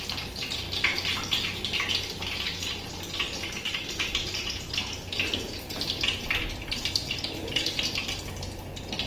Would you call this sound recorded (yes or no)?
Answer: yes